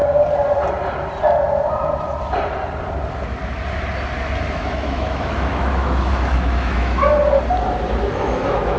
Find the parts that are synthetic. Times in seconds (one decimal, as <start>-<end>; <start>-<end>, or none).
4.5-7.0; 8.0-8.8